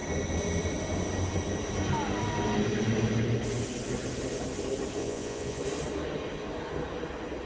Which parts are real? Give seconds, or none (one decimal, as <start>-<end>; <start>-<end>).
0.0-5.0; 5.6-7.5